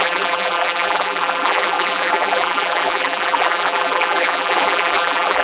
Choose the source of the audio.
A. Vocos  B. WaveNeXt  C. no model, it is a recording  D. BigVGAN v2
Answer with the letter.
D